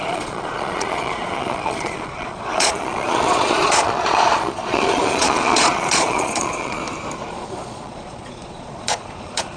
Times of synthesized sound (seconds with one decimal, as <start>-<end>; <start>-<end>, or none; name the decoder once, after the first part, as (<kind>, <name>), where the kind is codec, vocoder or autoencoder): 0.0-6.8 (vocoder, Vocos); 7.3-9.6